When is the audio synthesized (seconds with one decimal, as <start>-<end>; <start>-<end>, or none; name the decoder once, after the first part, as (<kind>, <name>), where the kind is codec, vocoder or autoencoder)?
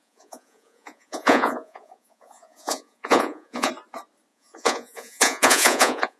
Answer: 0.0-3.7 (vocoder, Vocos); 4.3-6.2